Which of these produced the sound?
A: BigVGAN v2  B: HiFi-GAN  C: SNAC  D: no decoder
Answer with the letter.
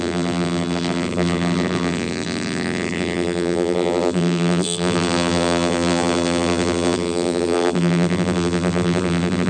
A